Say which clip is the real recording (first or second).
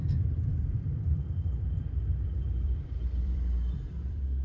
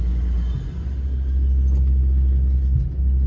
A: second